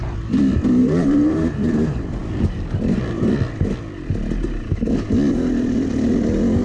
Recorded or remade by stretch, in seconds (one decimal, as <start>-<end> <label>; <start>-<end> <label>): 0.0-0.8 recorded; 0.8-1.5 remade; 1.5-6.6 recorded